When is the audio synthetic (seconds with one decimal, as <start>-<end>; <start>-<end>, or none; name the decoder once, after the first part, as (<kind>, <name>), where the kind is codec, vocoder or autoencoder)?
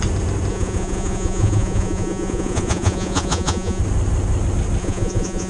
0.5-3.8 (vocoder, Vocos); 4.8-5.5